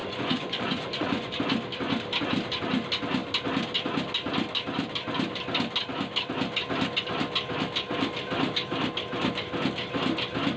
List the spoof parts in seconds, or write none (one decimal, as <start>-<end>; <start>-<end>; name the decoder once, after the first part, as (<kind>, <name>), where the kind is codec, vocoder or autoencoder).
0.0-1.3 (vocoder, Vocos)